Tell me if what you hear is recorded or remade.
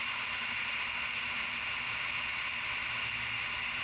recorded